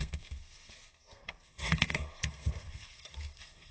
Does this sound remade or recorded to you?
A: remade